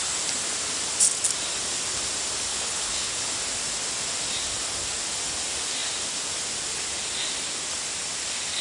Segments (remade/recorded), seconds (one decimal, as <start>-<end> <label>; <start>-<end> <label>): 0.0-2.5 recorded; 2.5-3.3 remade; 3.3-8.6 recorded